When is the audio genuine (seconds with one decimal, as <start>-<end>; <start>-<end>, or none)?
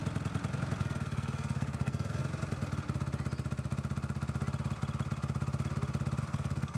0.0-0.8; 2.2-6.2